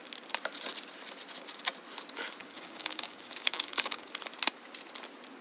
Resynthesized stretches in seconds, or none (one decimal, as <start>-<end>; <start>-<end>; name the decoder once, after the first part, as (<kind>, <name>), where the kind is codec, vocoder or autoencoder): 2.4-4.1 (codec, DAC)

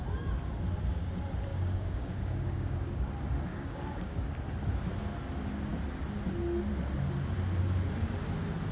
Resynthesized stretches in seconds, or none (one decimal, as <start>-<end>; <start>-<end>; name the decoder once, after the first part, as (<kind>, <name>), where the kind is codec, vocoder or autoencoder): 1.5-3.1 (codec, DAC); 3.5-4.2

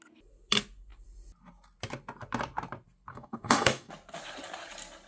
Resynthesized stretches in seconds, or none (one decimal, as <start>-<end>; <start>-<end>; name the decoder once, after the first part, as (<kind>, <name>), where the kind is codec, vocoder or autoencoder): 3.1-3.9 (codec, DAC)

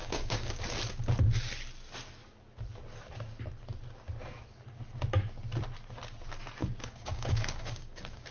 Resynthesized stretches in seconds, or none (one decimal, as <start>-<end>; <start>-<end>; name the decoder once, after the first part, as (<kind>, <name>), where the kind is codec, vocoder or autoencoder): 0.0-0.6 (codec, DAC); 6.6-8.3

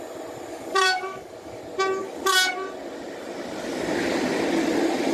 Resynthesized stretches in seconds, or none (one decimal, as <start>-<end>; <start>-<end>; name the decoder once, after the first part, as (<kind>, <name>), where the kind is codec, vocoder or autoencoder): 0.5-1.6 (codec, DAC); 2.0-2.5

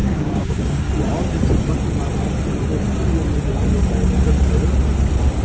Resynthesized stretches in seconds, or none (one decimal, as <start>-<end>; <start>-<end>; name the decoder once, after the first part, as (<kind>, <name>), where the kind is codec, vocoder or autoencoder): 0.0-0.9 (codec, DAC)

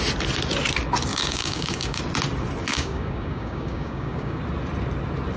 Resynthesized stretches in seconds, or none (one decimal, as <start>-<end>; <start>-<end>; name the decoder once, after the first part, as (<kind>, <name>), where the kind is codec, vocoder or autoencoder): 1.1-2.0 (codec, DAC); 2.7-4.4